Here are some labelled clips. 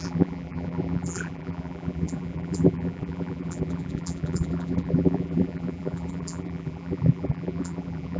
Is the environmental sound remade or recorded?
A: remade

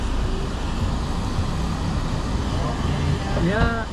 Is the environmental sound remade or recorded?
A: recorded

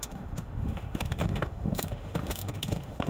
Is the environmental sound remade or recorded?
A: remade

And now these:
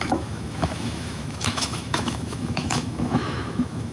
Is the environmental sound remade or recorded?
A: remade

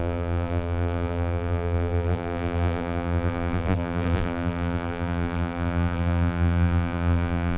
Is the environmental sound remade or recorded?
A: remade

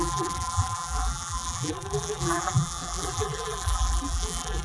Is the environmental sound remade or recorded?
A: remade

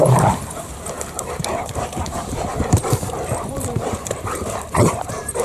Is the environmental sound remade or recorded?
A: remade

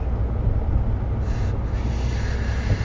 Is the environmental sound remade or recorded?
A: recorded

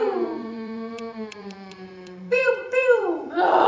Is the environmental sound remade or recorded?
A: remade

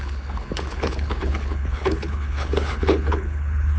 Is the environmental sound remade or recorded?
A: remade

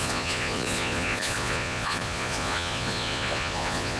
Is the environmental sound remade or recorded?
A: remade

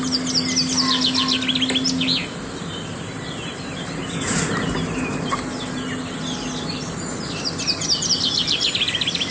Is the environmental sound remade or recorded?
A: remade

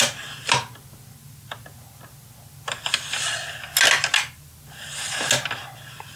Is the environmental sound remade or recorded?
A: recorded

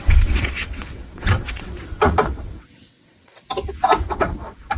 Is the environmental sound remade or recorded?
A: remade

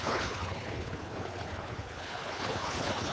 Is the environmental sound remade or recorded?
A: remade